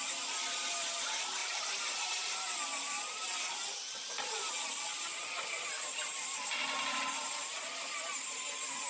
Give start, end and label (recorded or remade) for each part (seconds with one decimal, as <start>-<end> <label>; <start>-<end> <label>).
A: 0.0-1.4 recorded; 1.4-4.5 remade; 4.5-8.9 recorded